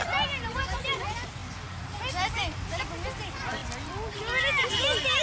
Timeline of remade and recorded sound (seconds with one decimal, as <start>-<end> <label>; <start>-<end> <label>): 0.0-5.2 recorded